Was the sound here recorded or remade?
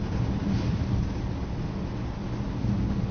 recorded